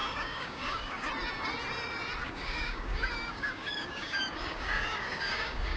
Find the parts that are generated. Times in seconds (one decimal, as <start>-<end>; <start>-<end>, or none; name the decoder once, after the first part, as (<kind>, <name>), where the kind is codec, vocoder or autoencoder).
0.0-1.1 (codec, DAC); 2.2-5.8